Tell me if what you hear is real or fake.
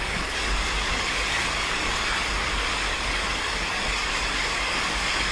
fake